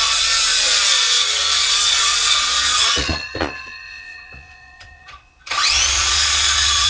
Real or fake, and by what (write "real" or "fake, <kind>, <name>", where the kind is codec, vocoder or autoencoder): fake, vocoder, Vocos